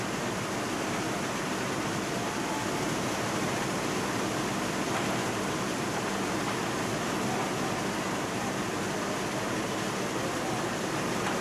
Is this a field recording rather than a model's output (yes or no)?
yes